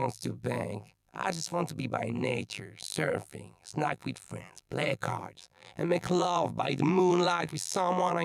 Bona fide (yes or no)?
no